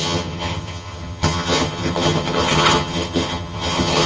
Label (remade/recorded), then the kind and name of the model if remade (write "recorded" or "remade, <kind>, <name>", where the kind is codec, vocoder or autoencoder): remade, vocoder, HiFi-GAN